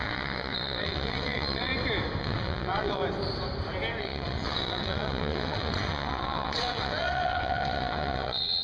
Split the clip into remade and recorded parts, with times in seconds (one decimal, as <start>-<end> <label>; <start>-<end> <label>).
0.0-1.7 remade; 1.7-2.2 recorded; 2.2-3.0 remade; 3.0-4.0 recorded; 4.0-8.6 remade